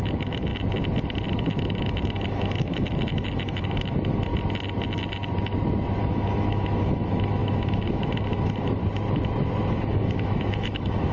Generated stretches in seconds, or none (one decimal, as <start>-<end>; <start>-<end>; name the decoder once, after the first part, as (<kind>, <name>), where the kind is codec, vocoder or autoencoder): 0.0-0.5 (autoencoder, DAC-VAE); 1.3-4.3; 6.0-8.8; 9.7-11.1